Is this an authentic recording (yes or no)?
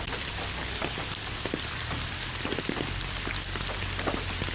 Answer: yes